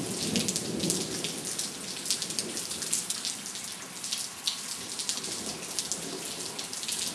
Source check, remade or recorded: recorded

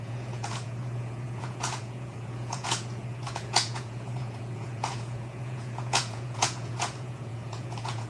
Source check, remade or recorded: remade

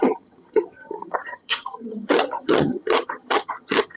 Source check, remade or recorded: remade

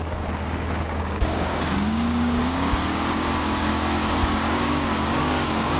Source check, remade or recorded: remade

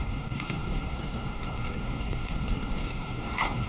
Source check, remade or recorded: remade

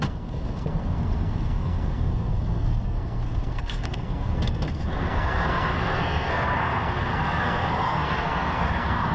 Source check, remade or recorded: remade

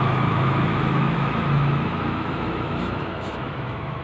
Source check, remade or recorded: remade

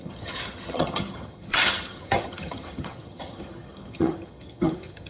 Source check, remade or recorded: remade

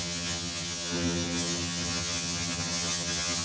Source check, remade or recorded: remade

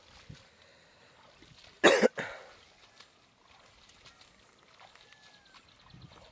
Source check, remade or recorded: recorded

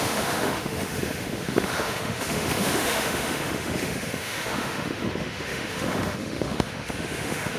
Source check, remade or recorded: remade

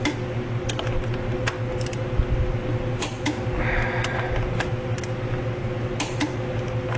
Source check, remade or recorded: recorded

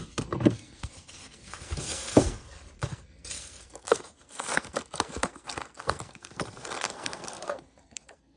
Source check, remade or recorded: remade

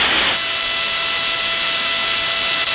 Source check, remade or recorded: recorded